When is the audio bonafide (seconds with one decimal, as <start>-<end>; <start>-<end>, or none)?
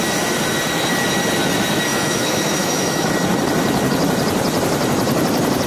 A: 0.0-1.9; 3.1-5.7